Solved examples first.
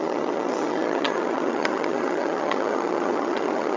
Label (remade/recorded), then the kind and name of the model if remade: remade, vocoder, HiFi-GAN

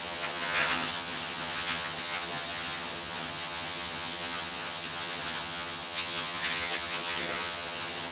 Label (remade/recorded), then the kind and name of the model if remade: remade, vocoder, HiFi-GAN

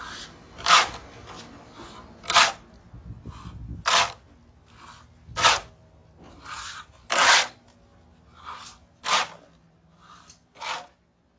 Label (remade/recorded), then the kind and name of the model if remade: recorded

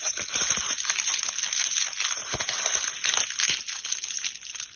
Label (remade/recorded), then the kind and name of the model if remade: recorded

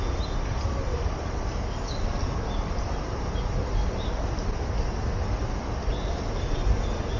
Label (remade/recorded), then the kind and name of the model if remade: recorded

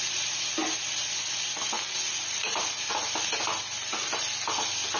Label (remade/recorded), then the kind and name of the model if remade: recorded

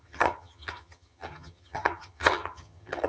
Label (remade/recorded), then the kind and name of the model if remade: remade, vocoder, HiFi-GAN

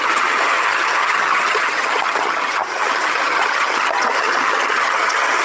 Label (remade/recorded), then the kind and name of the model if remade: remade, vocoder, HiFi-GAN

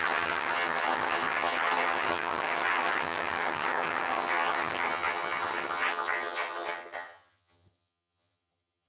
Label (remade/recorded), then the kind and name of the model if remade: remade, vocoder, HiFi-GAN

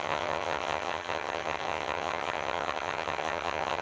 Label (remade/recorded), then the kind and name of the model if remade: remade, vocoder, HiFi-GAN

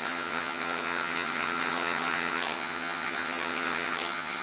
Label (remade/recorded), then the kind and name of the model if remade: remade, vocoder, HiFi-GAN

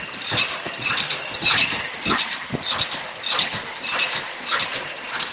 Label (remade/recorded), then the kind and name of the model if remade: recorded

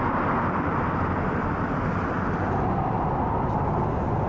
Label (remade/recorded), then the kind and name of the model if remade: recorded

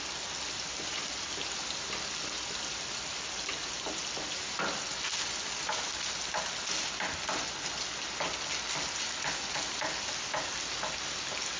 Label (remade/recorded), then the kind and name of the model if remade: recorded